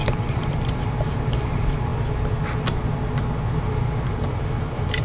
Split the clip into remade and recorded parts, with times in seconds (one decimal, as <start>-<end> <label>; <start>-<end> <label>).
0.0-1.9 remade; 1.9-4.1 recorded; 4.1-5.0 remade